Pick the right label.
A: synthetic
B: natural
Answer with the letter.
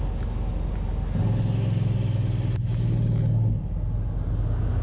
B